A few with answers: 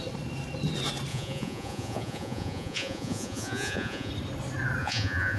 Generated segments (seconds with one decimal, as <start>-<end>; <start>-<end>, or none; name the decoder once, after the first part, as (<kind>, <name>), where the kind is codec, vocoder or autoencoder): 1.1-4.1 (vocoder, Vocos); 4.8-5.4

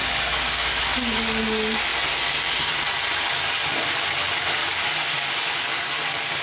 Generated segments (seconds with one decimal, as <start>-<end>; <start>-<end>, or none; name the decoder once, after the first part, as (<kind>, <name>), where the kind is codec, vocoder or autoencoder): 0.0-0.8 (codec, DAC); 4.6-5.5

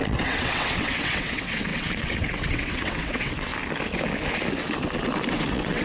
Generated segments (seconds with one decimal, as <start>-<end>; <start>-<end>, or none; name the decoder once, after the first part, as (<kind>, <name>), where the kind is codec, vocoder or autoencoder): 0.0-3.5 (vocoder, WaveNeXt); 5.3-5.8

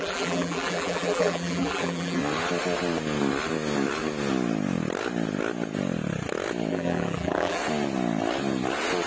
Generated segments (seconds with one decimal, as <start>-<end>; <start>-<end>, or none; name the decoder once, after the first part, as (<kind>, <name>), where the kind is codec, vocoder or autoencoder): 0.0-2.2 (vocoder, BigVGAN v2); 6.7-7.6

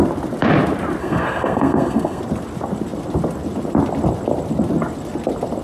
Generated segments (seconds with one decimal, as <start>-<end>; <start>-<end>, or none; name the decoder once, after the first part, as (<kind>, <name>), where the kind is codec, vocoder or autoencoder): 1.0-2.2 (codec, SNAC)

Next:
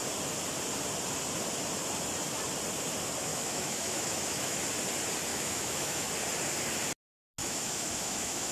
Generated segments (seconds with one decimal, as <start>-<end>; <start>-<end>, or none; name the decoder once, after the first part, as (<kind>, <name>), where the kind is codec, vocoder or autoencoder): 3.3-4.6 (autoencoder, DAC-VAE); 5.3-6.1; 7.4-8.5

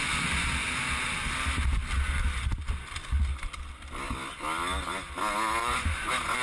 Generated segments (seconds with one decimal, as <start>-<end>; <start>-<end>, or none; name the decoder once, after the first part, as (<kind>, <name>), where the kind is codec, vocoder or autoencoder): 5.6-6.4 (vocoder, Vocos)

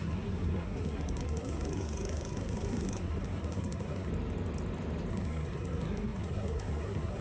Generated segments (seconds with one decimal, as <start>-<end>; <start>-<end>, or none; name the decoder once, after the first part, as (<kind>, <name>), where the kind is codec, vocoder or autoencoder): 0.0-4.1 (codec, SNAC); 5.1-7.2